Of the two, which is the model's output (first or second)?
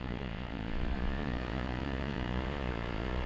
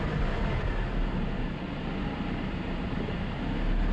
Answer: first